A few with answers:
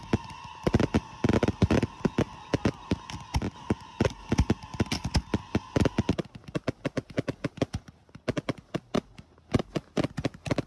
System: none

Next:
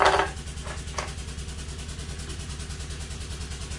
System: none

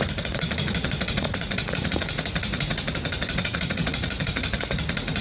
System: vocoder, Vocos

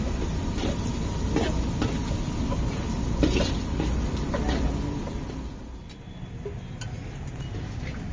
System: none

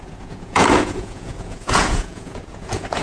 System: vocoder, Vocos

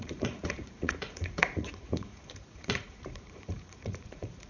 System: vocoder, Vocos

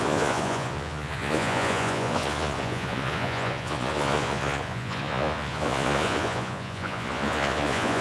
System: vocoder, Vocos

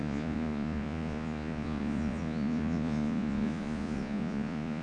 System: vocoder, Vocos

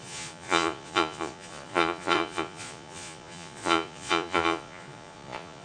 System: vocoder, Vocos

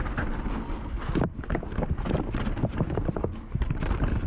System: none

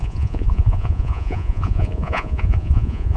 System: vocoder, Vocos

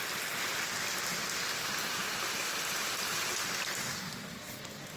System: none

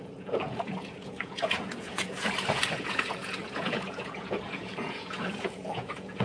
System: vocoder, Vocos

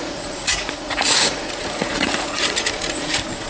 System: vocoder, Vocos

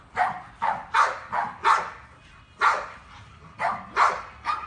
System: none